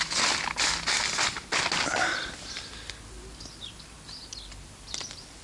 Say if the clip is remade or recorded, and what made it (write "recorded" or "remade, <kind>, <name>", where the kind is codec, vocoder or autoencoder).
recorded